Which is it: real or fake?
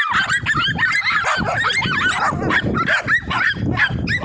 real